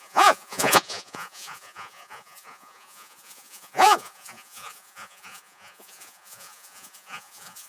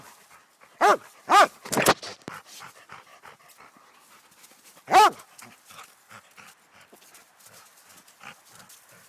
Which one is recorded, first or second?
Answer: second